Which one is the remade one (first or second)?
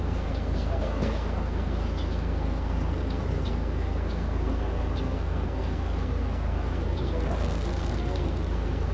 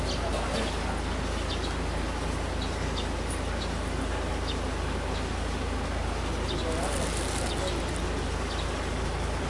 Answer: first